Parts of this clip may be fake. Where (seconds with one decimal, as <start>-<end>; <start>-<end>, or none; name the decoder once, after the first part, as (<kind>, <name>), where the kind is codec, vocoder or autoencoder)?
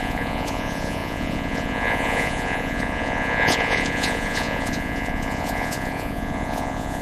0.0-7.0 (vocoder, Vocos)